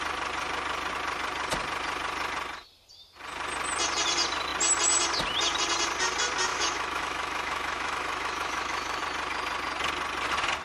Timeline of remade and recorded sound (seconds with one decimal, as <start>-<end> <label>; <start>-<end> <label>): 0.0-6.5 recorded; 6.5-9.0 remade; 9.0-10.6 recorded